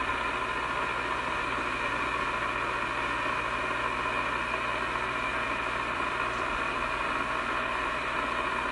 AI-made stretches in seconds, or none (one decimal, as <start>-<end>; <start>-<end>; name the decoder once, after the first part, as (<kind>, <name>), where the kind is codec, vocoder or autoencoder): 5.3-6.7 (vocoder, BigVGAN v2)